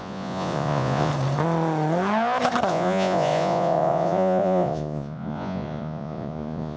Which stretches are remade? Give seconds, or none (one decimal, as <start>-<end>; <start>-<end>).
0.0-1.1; 2.7-6.8